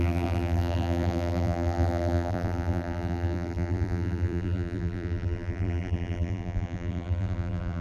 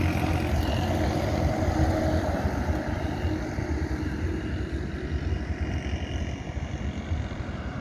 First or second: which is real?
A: second